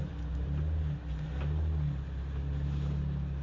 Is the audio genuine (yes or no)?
yes